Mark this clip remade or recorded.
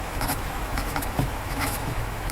remade